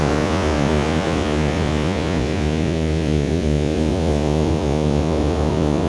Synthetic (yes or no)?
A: yes